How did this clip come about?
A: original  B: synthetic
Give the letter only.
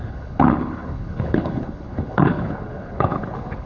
B